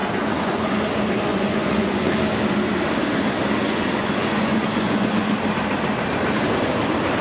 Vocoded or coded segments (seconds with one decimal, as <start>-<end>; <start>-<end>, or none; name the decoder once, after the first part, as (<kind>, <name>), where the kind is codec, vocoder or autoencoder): 0.0-0.7 (vocoder, Vocos); 1.3-2.1; 3.6-5.3